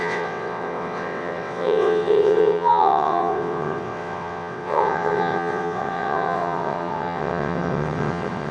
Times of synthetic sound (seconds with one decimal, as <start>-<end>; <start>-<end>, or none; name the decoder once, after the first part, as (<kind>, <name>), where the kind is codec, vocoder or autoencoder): 0.0-8.5 (vocoder, WaveNeXt)